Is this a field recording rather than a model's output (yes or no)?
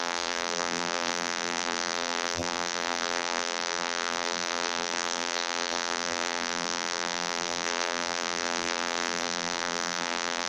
no